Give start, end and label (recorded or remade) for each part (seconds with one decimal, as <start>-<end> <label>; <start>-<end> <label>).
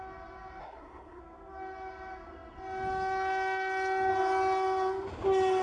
0.0-0.6 recorded; 0.6-1.2 remade; 1.2-5.6 recorded